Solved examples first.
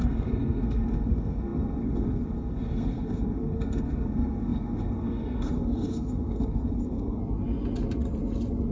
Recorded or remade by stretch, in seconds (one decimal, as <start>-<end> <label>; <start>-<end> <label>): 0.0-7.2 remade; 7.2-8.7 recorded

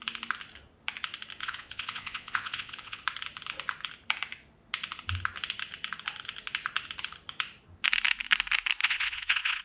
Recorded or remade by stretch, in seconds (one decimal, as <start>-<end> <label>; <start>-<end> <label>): 0.0-1.4 recorded; 1.4-3.0 remade; 3.0-8.8 recorded; 8.8-9.6 remade

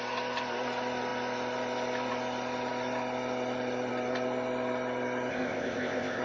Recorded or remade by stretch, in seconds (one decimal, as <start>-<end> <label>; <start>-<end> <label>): 0.0-5.3 recorded; 5.3-6.2 remade